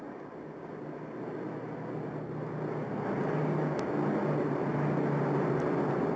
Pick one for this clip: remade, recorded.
recorded